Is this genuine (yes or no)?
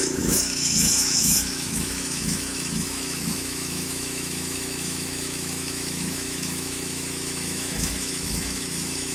no